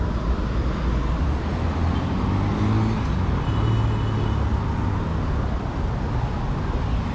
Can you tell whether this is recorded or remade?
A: recorded